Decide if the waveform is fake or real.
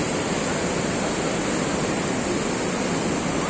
real